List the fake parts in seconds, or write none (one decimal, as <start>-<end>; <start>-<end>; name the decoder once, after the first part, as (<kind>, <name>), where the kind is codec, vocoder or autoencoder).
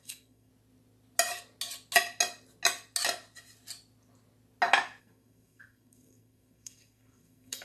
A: 0.0-0.5 (codec, SNAC); 5.0-7.6